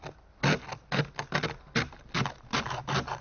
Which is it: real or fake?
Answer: real